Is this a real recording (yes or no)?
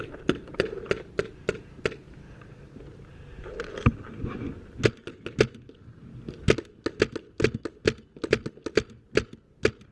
yes